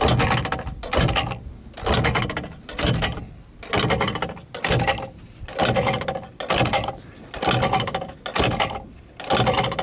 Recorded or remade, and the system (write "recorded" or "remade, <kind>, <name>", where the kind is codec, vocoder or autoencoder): recorded